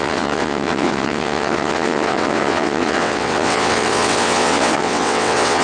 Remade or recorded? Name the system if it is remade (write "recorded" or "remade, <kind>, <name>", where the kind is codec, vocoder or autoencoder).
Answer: remade, vocoder, WaveNeXt